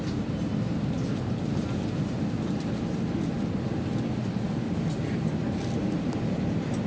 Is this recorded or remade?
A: recorded